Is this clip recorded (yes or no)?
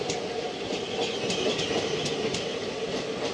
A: yes